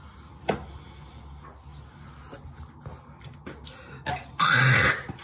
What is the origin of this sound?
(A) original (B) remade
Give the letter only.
A